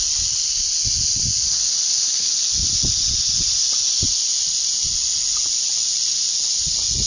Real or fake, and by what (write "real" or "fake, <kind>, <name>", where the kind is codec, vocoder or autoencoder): real